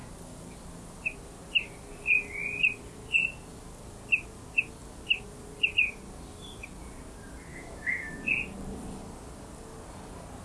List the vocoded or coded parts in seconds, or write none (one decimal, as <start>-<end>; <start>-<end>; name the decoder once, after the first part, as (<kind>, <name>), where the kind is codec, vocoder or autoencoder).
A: 7.5-8.2 (autoencoder, DAC-VAE)